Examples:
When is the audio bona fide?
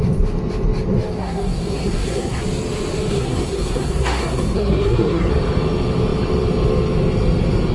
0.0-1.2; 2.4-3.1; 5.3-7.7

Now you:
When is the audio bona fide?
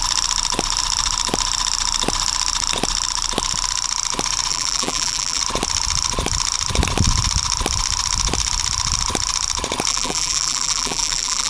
0.0-4.5; 5.4-9.9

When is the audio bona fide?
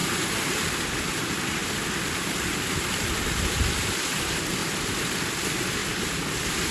0.8-1.6; 3.3-4.6; 5.2-6.7